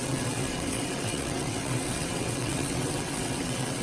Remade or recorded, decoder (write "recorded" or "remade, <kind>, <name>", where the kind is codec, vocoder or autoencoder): remade, vocoder, WaveNeXt